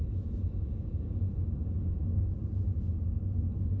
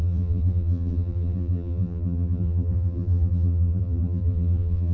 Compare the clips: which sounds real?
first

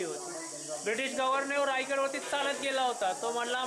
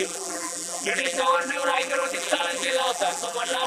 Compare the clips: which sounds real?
first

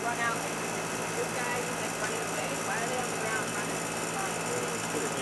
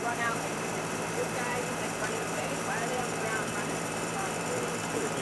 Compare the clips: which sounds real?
first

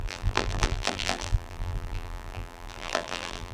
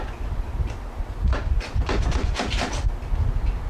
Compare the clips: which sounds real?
second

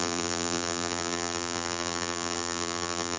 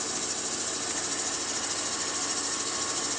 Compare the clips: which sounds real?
second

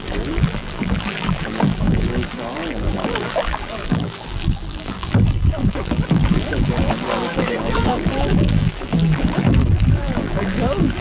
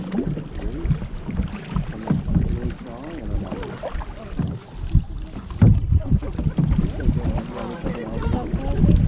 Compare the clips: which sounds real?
second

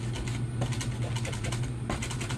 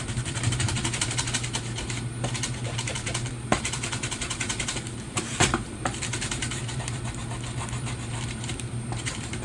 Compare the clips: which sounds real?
first